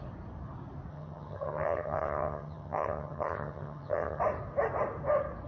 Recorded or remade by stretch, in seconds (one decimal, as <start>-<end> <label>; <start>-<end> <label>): 0.0-0.9 recorded; 0.9-4.2 remade; 4.2-5.5 recorded